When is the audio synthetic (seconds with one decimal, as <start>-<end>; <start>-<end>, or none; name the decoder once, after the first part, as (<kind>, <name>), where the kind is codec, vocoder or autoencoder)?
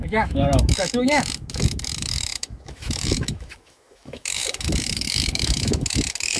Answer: 0.0-6.4 (autoencoder, DAC-VAE)